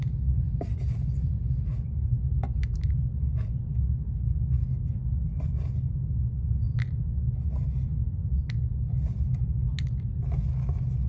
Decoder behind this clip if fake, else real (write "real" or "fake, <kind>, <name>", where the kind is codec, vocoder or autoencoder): real